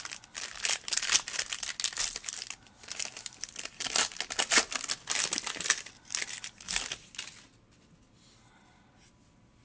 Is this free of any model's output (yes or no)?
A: yes